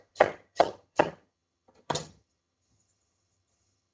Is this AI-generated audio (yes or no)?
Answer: yes